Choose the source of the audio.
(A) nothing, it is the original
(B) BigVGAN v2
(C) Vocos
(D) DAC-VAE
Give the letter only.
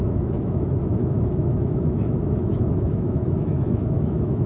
D